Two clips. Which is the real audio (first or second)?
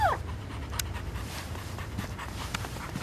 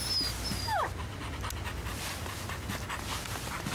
second